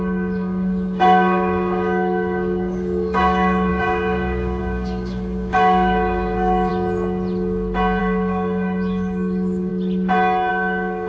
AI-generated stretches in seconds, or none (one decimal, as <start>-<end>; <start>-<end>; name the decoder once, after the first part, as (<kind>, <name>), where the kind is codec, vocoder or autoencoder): 0.0-6.7 (codec, DAC); 8.0-9.7; 10.5-11.1